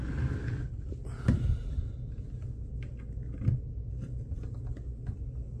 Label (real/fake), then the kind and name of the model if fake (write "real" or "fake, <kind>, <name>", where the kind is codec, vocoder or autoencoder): real